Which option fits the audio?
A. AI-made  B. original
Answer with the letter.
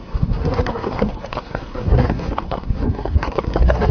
A